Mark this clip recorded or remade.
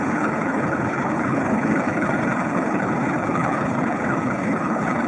remade